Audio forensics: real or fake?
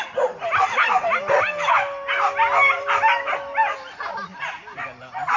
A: real